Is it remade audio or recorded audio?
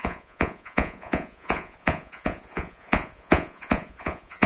remade